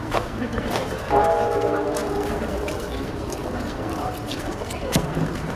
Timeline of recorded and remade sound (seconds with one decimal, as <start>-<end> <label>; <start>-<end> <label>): 0.0-5.6 remade